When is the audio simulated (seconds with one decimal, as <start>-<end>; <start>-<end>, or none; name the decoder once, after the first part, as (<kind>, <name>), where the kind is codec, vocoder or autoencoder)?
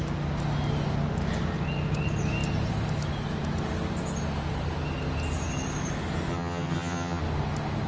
6.3-7.2 (vocoder, HiFi-GAN)